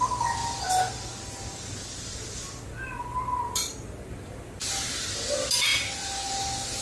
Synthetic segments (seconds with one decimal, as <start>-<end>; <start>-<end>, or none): none